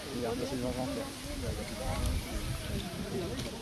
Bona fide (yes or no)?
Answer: no